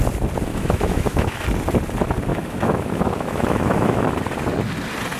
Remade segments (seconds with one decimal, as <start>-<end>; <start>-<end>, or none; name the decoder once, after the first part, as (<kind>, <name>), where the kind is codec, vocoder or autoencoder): 0.5-1.4 (autoencoder, DAC-VAE); 2.3-4.0